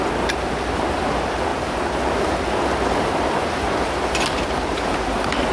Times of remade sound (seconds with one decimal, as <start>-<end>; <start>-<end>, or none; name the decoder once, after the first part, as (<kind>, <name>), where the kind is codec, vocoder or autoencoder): 1.5-3.3 (vocoder, BigVGAN v2); 4.7-5.5